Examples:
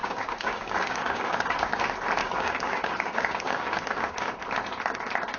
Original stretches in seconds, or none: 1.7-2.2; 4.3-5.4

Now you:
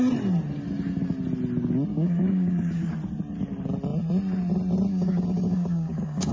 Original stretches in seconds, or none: 0.0-1.9; 2.9-4.9